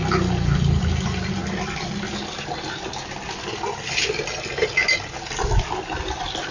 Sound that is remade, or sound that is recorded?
recorded